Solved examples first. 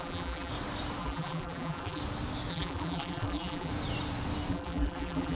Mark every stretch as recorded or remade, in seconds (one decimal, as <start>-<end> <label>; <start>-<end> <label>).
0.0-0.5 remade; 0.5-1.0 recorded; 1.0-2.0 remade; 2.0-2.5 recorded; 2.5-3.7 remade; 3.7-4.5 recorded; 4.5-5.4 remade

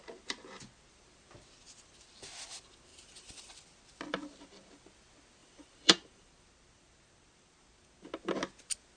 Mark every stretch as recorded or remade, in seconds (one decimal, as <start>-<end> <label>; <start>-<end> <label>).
0.0-2.9 recorded; 2.9-3.5 remade; 3.5-5.4 recorded; 5.4-6.3 remade; 6.3-9.0 recorded

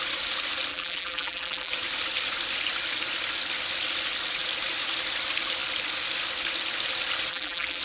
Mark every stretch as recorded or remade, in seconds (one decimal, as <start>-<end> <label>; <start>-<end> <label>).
0.0-0.7 recorded; 0.7-1.7 remade; 1.7-7.3 recorded; 7.3-7.8 remade